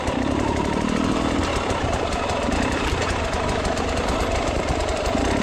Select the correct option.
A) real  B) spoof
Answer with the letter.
B